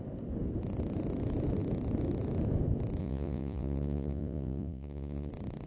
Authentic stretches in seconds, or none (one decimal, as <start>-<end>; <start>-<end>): 0.0-3.0; 5.3-5.7